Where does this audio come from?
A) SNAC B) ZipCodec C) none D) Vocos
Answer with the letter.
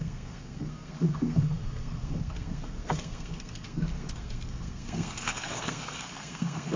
A